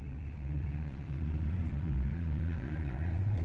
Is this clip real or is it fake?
fake